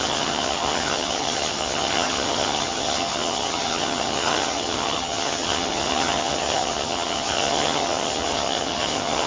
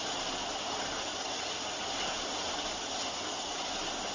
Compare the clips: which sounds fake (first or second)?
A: first